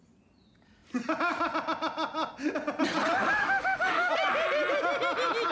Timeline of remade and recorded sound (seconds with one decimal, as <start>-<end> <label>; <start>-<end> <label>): 0.0-3.4 recorded; 3.4-4.1 remade; 4.1-5.5 recorded